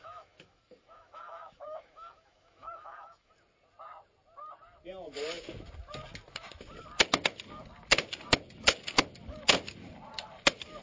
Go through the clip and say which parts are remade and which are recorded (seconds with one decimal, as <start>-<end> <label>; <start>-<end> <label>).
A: 0.0-3.3 remade; 3.3-10.8 recorded